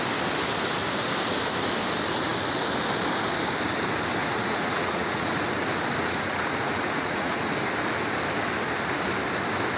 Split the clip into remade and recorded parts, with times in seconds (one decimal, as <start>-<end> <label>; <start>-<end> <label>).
0.0-4.2 recorded; 4.2-5.3 remade; 5.3-6.0 recorded; 6.0-7.4 remade; 7.4-9.8 recorded